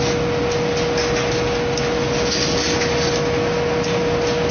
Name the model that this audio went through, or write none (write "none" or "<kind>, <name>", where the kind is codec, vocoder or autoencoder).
none